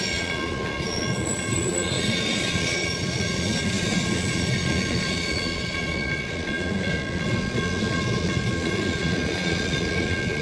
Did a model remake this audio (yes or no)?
yes